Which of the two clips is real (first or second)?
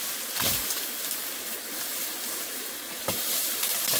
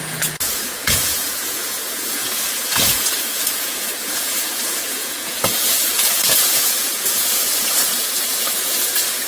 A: first